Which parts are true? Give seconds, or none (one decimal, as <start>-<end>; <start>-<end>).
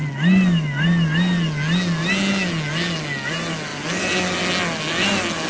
0.0-5.5